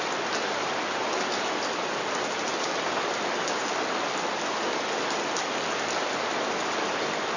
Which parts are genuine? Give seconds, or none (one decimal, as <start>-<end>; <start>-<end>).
0.0-7.4